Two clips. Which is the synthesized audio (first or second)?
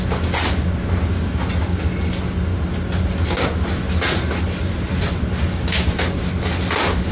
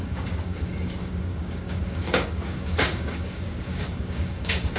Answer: second